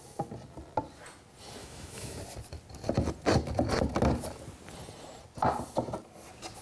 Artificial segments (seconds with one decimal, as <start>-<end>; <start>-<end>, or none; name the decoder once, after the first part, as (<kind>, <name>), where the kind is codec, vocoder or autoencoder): 1.6-2.2 (autoencoder, DAC-VAE)